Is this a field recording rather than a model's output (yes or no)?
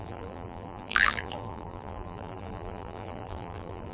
no